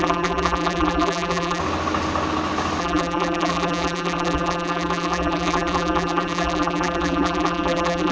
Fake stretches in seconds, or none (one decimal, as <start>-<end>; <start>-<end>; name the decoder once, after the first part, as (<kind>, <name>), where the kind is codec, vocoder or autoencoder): 0.0-1.6 (vocoder, BigVGAN v2); 2.8-8.1